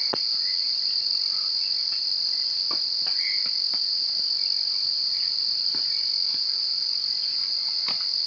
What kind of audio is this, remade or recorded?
recorded